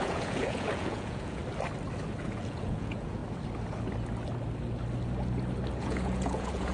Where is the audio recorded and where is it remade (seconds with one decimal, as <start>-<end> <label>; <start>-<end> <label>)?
0.0-1.4 remade; 1.4-2.2 recorded; 2.2-3.2 remade; 3.2-5.8 recorded; 5.8-6.7 remade